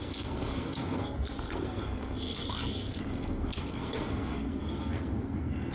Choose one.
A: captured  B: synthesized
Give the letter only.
B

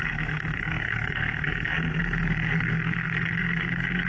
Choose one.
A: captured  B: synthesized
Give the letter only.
B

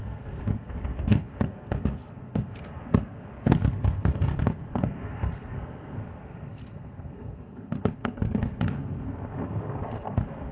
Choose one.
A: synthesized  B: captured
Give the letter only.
A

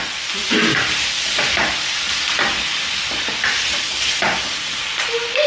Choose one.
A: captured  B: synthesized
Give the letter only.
A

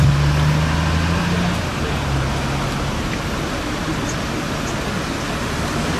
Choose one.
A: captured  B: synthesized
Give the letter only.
A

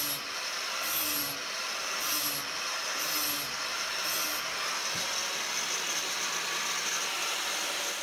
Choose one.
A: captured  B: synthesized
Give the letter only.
A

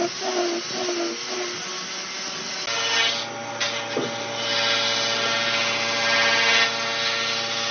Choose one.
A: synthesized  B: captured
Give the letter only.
B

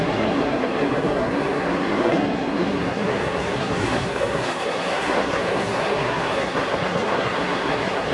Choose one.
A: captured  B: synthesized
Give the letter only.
B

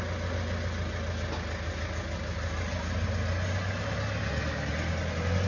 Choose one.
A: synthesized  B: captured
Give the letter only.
B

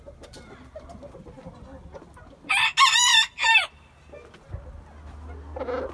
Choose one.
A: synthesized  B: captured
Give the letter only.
B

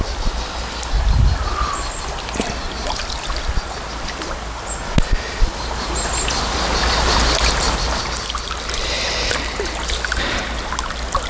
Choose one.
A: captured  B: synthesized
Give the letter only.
A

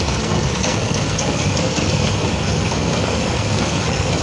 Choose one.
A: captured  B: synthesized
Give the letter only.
B